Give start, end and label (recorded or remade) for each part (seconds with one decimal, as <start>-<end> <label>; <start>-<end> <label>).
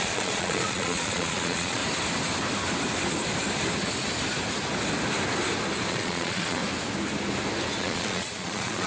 0.0-1.8 remade; 1.8-5.9 recorded; 5.9-6.6 remade; 6.6-7.8 recorded; 7.8-8.9 remade